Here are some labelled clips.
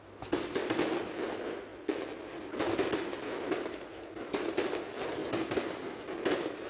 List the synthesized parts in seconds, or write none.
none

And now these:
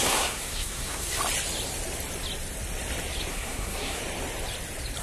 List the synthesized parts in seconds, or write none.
0.0-1.2 (codec, SNAC); 3.3-4.0

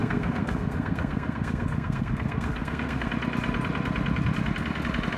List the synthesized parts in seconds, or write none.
0.0-3.1 (codec, SNAC)

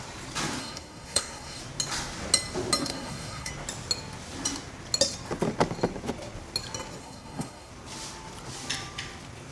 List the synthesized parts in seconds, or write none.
0.6-1.6 (codec, SNAC); 2.8-3.5; 7.0-7.7

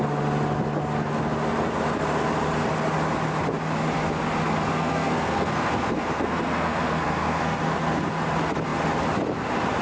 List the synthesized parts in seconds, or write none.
4.7-7.6 (codec, SNAC)

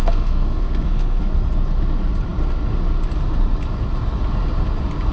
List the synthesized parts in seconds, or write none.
0.0-1.2 (codec, SNAC)

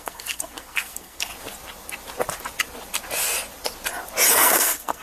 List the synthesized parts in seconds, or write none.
0.0-1.3 (codec, SNAC); 4.3-5.0